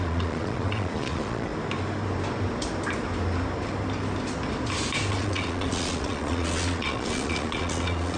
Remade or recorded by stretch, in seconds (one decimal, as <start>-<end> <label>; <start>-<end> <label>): 0.0-1.5 remade; 1.5-5.1 recorded; 5.1-8.2 remade